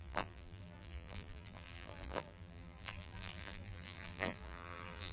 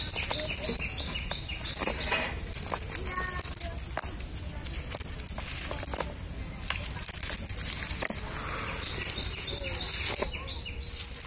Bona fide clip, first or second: second